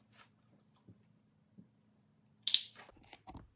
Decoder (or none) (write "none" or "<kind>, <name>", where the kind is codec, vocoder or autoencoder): none